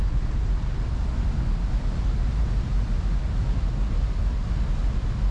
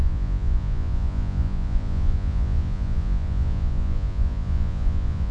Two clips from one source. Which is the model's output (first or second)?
second